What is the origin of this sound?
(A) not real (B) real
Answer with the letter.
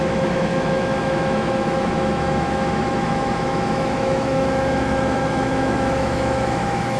A